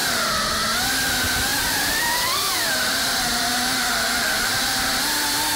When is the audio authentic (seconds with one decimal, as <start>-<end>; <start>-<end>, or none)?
0.5-1.5; 4.9-5.6